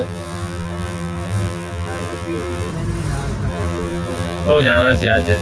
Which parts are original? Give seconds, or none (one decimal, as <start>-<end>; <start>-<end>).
2.7-3.5